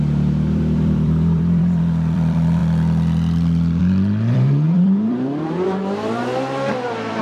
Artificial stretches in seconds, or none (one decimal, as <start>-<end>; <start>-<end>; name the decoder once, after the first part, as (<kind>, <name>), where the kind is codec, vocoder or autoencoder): 0.0-2.6 (vocoder, BigVGAN v2); 3.8-7.2